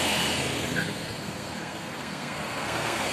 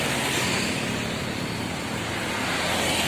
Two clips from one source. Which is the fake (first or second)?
first